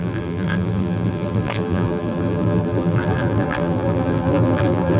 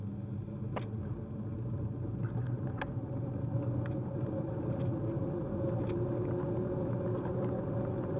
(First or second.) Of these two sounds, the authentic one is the second